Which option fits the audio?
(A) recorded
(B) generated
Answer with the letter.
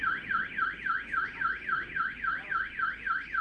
A